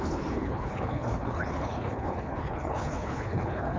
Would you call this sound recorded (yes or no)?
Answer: no